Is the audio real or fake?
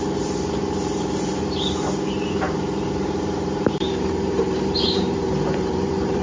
fake